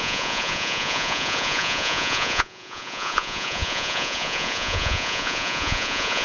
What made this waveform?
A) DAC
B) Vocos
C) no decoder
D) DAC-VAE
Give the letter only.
B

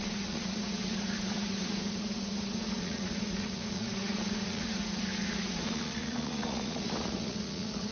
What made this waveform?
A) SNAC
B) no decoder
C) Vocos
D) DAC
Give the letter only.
C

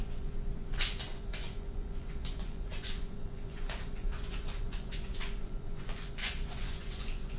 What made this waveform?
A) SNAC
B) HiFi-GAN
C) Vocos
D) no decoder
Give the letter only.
C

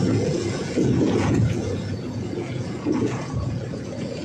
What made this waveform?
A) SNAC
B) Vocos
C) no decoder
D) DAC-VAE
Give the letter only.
B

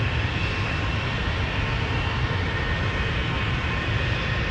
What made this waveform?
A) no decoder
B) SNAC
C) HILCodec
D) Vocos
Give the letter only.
A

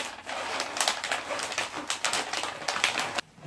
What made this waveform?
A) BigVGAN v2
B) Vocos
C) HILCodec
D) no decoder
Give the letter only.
D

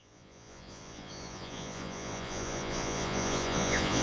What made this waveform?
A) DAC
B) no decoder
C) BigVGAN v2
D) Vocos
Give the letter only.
D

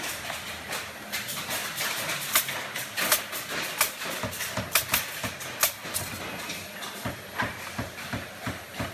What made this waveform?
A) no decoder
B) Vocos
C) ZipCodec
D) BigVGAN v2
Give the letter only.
A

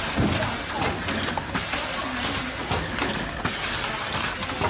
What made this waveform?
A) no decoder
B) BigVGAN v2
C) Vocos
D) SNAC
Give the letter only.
A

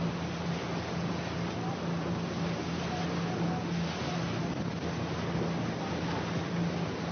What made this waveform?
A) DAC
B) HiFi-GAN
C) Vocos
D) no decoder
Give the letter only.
D